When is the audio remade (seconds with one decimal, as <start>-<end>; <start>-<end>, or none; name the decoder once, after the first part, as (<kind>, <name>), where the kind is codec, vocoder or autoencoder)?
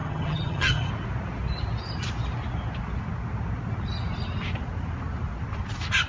0.0-0.9 (vocoder, HiFi-GAN)